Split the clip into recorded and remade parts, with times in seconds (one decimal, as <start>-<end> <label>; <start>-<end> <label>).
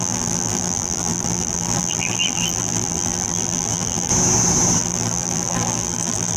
0.0-4.1 remade; 4.1-4.8 recorded; 4.8-6.4 remade